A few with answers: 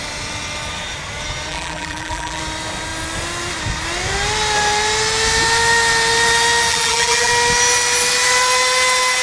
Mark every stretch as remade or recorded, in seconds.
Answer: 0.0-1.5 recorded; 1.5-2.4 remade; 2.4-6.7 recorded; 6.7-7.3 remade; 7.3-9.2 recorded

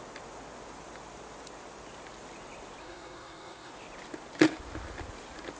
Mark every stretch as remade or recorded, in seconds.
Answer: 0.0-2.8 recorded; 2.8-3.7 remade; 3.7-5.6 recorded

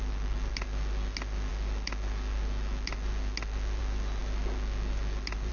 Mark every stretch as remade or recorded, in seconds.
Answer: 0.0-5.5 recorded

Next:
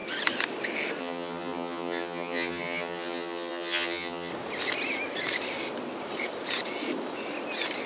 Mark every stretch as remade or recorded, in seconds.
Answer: 0.0-1.0 recorded; 1.0-4.3 remade; 4.3-7.9 recorded

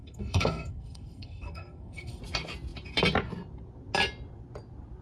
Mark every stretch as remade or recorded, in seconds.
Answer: 0.0-2.2 remade; 2.2-5.0 recorded